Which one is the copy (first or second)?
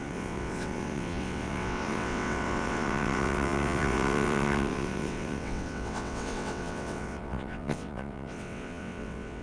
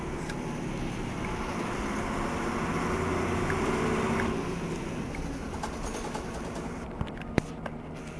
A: first